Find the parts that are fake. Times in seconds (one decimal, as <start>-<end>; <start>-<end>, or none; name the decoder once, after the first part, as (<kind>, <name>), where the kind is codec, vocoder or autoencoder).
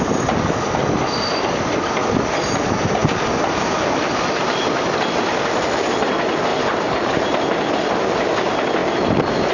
6.5-7.7 (vocoder, BigVGAN v2)